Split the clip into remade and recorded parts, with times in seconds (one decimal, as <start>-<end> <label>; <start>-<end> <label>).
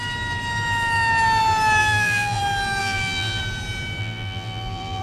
0.0-1.8 recorded; 1.8-2.4 remade; 2.4-2.8 recorded; 2.8-3.4 remade; 3.4-4.0 recorded; 4.0-5.0 remade